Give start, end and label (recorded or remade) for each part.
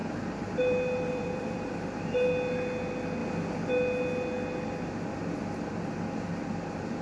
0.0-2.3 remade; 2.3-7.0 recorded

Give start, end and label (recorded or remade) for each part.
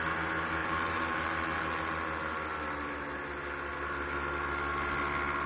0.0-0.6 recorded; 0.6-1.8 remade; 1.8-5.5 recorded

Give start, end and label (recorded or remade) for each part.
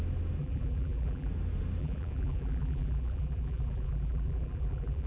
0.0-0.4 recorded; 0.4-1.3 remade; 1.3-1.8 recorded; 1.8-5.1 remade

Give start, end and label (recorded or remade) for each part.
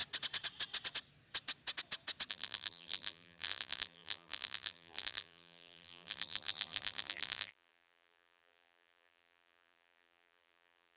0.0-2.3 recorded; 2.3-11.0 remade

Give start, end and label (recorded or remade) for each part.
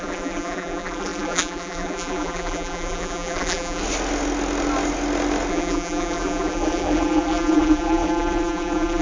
0.0-3.8 remade; 3.8-5.5 recorded; 5.5-9.0 remade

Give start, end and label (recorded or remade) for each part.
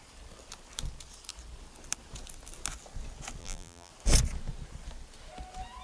0.0-3.4 recorded; 3.4-3.9 remade; 3.9-5.8 recorded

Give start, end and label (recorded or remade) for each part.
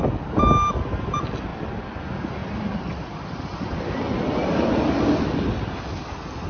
0.0-1.5 recorded; 1.5-2.0 remade; 2.0-2.4 recorded; 2.4-5.7 remade; 5.7-6.5 recorded